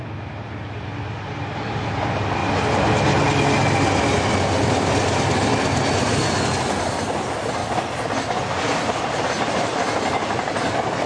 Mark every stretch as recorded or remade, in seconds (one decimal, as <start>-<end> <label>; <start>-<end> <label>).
0.0-2.4 remade; 2.4-6.8 recorded; 6.8-7.6 remade; 7.6-9.0 recorded; 9.0-11.1 remade